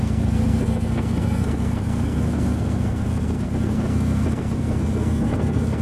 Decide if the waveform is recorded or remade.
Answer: remade